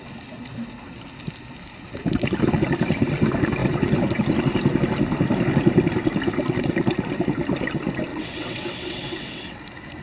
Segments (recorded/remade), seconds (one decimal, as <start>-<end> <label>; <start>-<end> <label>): 0.0-8.1 recorded; 8.1-9.6 remade; 9.6-10.0 recorded